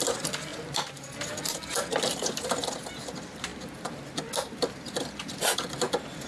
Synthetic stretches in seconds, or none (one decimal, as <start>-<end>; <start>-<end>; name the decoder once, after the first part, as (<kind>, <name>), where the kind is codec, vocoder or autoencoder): none